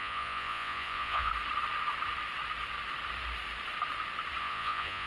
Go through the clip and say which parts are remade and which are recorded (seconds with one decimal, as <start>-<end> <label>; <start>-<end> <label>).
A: 0.0-1.3 remade; 1.3-4.4 recorded; 4.4-5.1 remade